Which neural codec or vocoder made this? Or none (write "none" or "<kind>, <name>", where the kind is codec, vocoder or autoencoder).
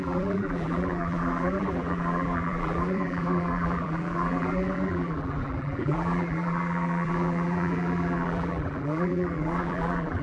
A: vocoder, BigVGAN v2